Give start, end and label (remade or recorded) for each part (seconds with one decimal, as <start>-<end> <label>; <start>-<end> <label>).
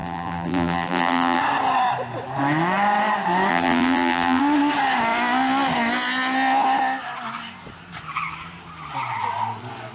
0.0-1.4 remade; 1.4-3.5 recorded; 3.5-4.4 remade; 4.4-9.9 recorded